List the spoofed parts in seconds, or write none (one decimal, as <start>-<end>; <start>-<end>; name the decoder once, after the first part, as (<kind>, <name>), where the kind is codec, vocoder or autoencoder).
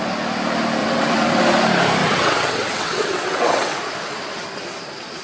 0.8-1.4 (vocoder, WaveNeXt); 2.0-3.8